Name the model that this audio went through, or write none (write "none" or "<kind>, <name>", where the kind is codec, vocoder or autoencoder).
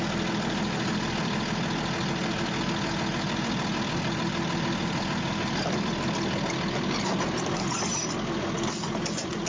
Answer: none